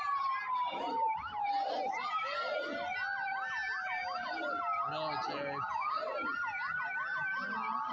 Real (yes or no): yes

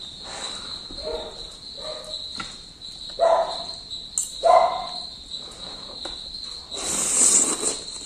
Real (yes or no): yes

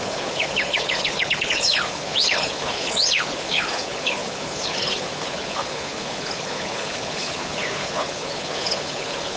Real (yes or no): no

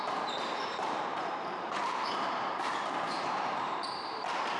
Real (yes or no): no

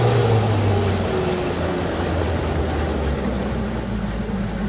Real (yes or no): yes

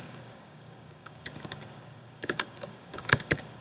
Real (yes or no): no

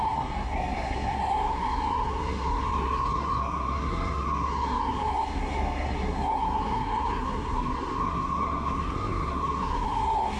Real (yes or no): no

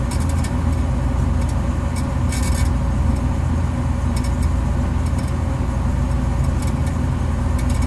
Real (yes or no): yes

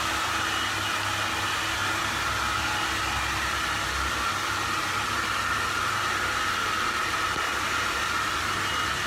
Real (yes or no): yes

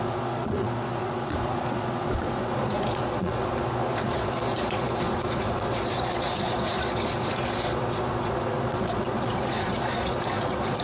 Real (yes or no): no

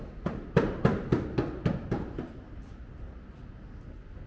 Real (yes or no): yes